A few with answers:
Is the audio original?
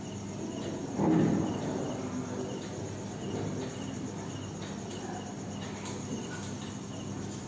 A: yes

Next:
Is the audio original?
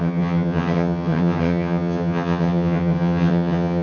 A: no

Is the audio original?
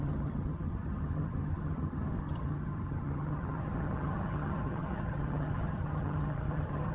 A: no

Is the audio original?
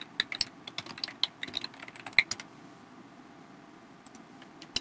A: yes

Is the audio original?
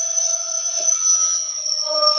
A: no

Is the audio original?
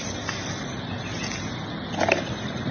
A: yes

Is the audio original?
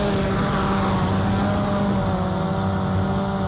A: yes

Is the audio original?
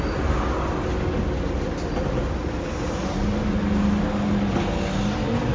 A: yes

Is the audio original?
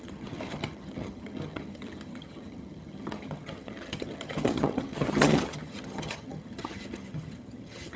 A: no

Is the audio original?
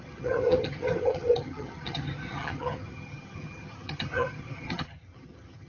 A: no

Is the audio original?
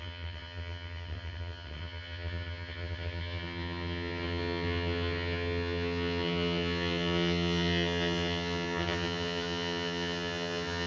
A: no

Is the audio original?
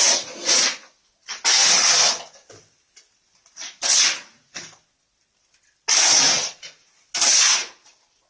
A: yes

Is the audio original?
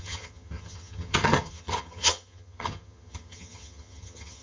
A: no